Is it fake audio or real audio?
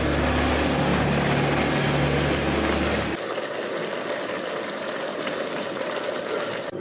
real